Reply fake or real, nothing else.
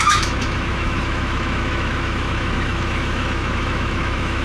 fake